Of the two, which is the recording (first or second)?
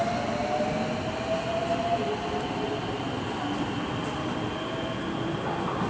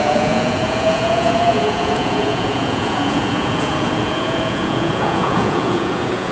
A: first